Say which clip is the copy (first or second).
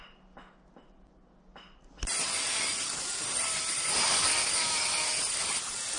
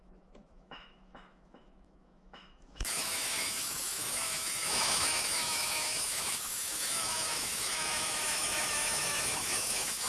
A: second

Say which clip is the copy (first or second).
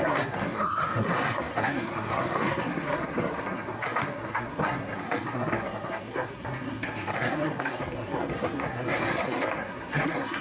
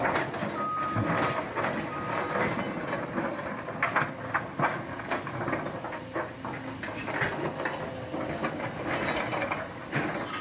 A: first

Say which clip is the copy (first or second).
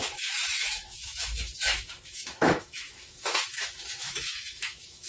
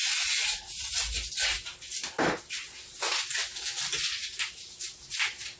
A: first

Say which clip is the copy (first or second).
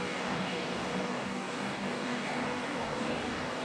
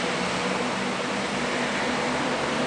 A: first